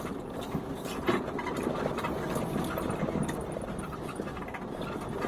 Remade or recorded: recorded